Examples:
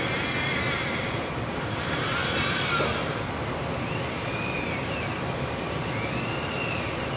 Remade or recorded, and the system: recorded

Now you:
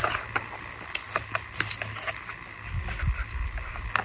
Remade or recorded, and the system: recorded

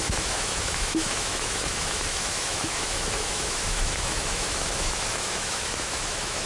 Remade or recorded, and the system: remade, autoencoder, DAC-VAE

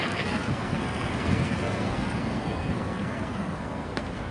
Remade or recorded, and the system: remade, codec, SNAC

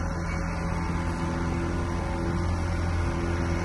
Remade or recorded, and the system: recorded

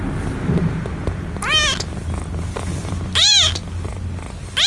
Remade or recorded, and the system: recorded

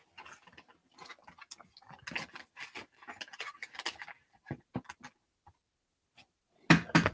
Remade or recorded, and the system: recorded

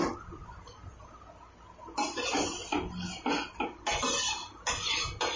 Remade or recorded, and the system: recorded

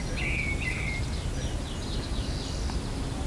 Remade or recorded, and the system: recorded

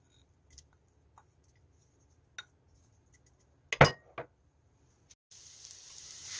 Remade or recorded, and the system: recorded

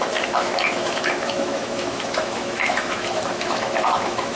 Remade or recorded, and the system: remade, autoencoder, DAC-VAE